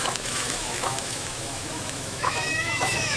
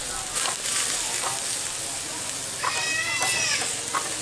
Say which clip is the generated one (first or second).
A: first